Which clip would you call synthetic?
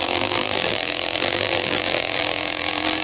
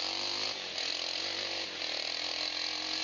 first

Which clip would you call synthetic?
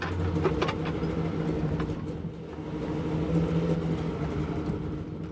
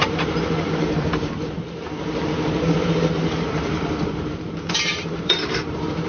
second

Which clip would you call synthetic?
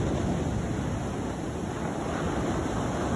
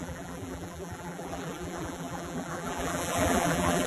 second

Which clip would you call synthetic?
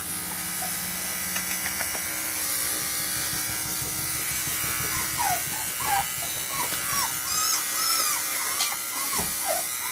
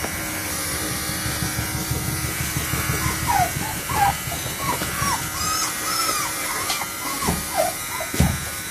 second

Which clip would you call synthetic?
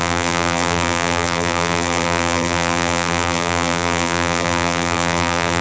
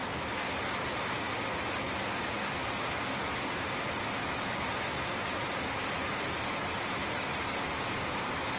first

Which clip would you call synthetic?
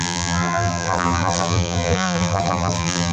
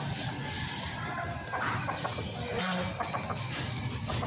first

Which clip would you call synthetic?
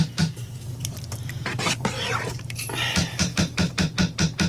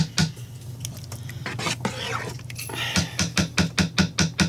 first